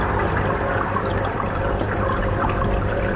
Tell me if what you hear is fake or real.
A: real